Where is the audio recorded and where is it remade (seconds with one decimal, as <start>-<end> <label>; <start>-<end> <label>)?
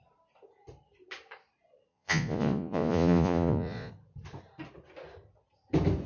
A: 0.0-1.9 recorded; 1.9-3.9 remade; 3.9-6.1 recorded